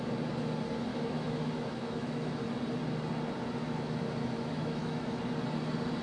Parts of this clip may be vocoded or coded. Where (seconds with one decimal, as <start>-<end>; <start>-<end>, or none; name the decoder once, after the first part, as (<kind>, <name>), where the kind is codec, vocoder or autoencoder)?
0.9-2.4 (autoencoder, DAC-VAE); 3.6-5.2